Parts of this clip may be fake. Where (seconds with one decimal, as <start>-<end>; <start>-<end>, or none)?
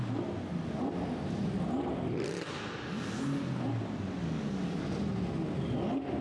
4.2-4.8